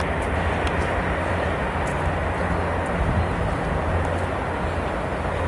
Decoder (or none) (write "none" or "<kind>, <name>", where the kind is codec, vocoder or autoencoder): none